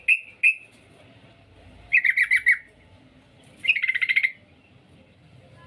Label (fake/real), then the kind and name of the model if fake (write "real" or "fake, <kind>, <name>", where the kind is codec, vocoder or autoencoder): real